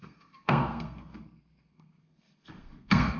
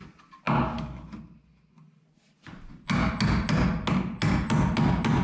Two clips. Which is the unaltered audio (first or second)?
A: second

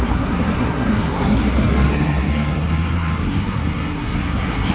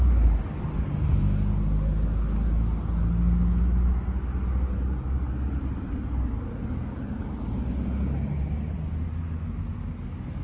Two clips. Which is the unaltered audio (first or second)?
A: second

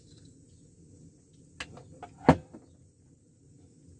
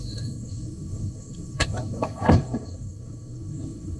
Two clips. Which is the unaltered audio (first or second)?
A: first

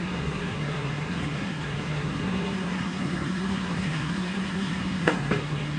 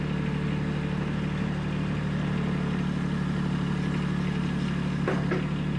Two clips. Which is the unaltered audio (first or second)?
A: second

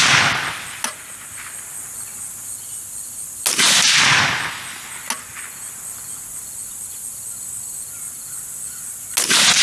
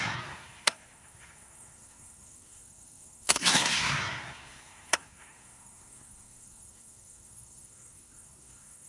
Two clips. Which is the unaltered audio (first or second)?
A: first